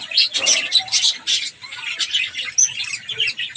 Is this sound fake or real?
real